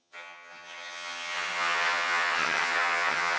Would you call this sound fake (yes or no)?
yes